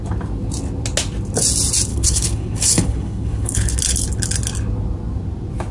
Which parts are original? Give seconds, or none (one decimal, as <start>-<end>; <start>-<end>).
0.0-1.9; 3.8-5.7